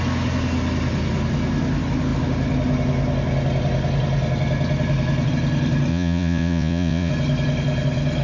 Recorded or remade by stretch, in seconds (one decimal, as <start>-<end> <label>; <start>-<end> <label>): 0.0-5.9 recorded; 5.9-7.1 remade; 7.1-8.2 recorded

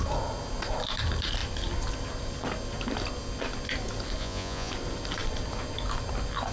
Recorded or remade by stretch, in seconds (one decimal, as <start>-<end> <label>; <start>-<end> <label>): 0.0-4.2 recorded; 4.2-4.7 remade; 4.7-6.5 recorded

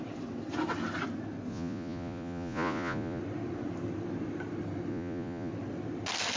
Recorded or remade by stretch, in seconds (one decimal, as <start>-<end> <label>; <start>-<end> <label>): 0.0-1.5 recorded; 1.5-3.2 remade; 3.2-4.9 recorded; 4.9-5.5 remade; 5.5-6.4 recorded

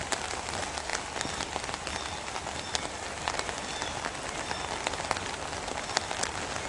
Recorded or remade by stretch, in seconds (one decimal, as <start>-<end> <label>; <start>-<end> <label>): 0.0-6.7 recorded

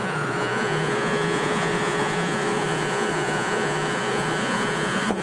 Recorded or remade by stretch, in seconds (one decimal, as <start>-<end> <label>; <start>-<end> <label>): 0.0-5.2 remade

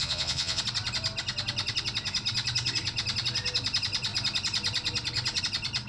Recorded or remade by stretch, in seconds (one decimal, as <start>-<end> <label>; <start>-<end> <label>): 0.0-0.6 remade; 0.6-5.9 recorded

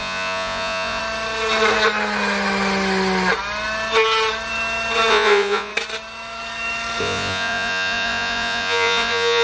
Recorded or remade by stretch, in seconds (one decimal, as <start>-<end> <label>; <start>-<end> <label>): 0.0-1.0 remade; 1.0-5.1 recorded; 5.1-5.7 remade; 5.7-7.0 recorded; 7.0-9.4 remade

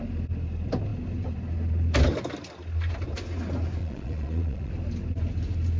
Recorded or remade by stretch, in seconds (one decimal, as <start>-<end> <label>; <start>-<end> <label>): 0.0-3.8 recorded; 3.8-4.7 remade; 4.7-5.8 recorded